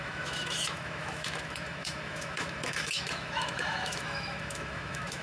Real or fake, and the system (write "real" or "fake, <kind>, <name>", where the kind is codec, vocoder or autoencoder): fake, autoencoder, DAC-VAE